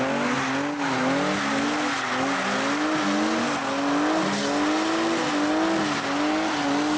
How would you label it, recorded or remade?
recorded